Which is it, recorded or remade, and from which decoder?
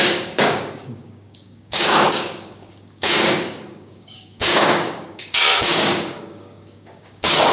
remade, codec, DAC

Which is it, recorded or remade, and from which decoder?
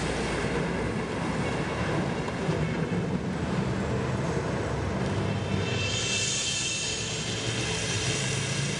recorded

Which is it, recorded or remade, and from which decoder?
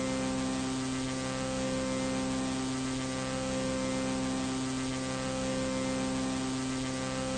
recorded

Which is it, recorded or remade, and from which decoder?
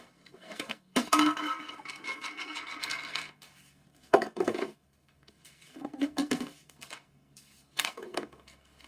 remade, codec, SNAC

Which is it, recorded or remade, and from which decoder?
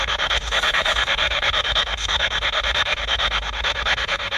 remade, autoencoder, DAC-VAE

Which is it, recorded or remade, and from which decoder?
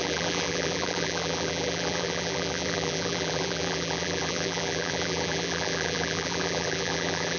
remade, vocoder, BigVGAN v2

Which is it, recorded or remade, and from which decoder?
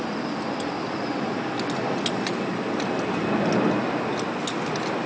recorded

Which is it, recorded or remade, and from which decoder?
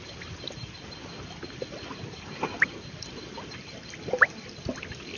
recorded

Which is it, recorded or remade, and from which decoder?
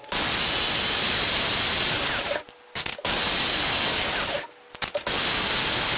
recorded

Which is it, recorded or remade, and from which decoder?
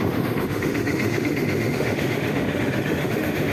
remade, autoencoder, DAC-VAE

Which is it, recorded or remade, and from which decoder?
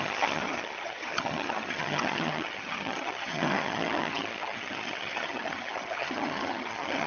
remade, vocoder, HiFi-GAN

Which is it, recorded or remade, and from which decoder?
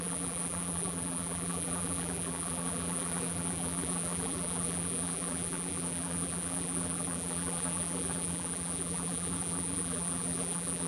remade, vocoder, BigVGAN v2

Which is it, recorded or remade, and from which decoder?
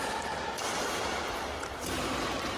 recorded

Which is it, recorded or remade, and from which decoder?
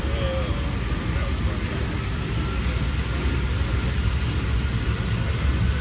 recorded